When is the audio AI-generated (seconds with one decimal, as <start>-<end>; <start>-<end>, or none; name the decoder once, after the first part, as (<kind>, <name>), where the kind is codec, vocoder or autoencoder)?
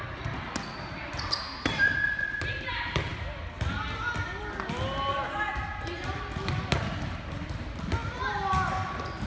none